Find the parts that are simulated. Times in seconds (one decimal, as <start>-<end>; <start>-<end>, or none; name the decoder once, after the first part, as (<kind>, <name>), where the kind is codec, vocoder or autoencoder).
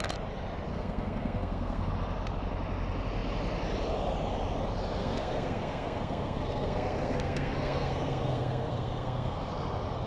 0.7-1.9 (codec, SNAC); 5.0-9.5